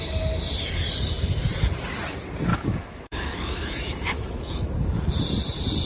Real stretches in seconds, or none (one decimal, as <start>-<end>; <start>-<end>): 0.0-2.5; 4.7-5.9